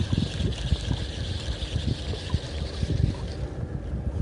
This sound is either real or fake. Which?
real